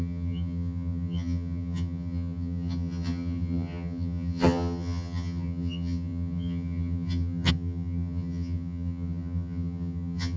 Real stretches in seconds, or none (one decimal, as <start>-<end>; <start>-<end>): none